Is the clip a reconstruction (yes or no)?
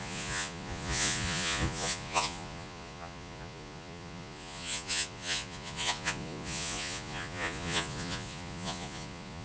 yes